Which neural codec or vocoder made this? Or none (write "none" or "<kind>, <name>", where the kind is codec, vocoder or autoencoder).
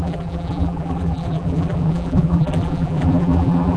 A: vocoder, BigVGAN v2